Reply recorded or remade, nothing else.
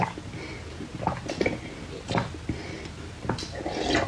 recorded